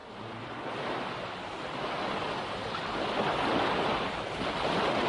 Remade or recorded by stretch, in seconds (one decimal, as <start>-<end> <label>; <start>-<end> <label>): 0.0-5.1 recorded